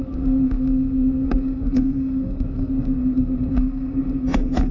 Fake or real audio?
fake